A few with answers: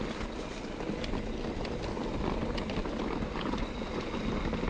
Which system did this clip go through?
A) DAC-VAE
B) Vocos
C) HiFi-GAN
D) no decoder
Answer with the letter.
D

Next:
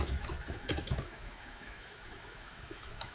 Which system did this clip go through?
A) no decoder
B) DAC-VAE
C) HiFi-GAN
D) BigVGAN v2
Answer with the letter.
B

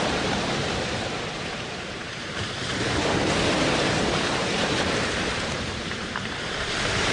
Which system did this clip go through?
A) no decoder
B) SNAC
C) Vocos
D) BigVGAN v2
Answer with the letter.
D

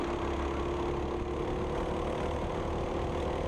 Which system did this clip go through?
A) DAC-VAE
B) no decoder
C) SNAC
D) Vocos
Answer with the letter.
B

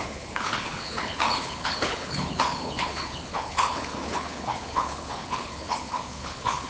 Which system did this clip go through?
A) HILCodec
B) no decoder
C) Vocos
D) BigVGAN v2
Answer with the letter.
A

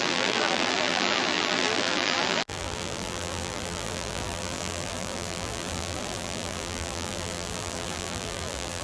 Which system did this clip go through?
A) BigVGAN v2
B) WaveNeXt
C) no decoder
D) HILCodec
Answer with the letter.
A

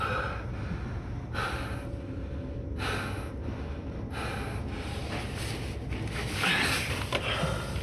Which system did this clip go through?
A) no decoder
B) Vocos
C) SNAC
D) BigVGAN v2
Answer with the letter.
A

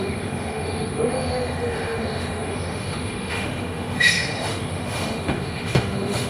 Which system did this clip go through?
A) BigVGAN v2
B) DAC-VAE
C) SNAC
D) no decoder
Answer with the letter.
B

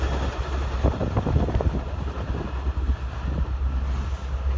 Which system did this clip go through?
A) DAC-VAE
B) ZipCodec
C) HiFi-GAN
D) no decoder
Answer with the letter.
D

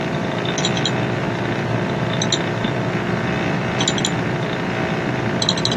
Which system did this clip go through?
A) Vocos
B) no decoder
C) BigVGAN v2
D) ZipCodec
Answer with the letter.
B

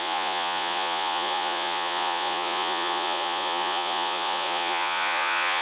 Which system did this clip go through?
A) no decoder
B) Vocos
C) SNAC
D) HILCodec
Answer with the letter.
B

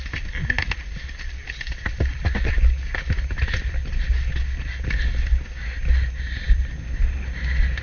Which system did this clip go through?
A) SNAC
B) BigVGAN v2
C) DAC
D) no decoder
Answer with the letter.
D